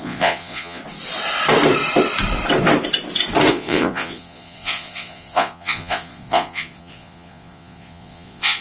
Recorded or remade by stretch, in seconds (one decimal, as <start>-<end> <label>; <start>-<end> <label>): 0.0-0.8 remade; 0.8-3.5 recorded; 3.5-8.6 remade